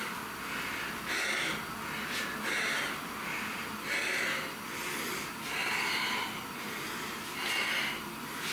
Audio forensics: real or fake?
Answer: real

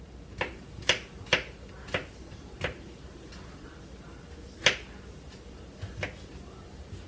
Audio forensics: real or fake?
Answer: real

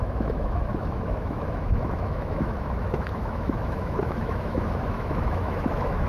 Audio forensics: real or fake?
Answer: fake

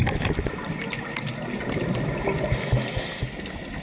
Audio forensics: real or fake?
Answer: real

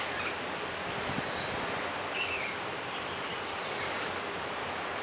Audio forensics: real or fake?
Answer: fake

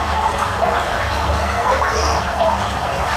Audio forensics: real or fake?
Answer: fake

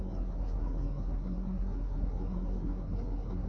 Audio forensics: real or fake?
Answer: fake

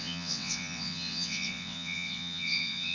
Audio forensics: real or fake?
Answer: fake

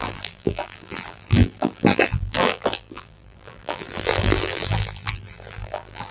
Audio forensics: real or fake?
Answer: fake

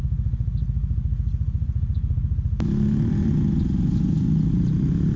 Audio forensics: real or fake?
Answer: real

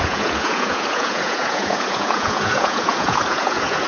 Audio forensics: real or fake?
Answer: fake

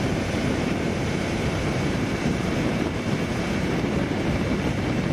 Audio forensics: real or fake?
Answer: fake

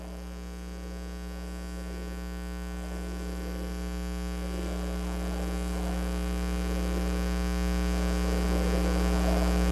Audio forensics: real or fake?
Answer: fake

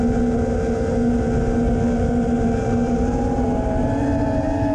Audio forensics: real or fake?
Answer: real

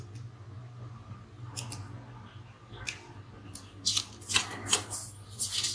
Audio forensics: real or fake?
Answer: real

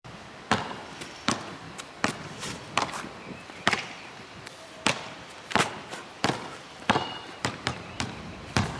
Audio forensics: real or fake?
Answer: fake